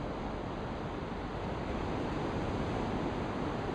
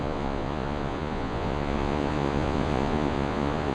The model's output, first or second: second